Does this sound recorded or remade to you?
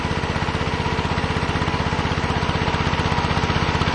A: recorded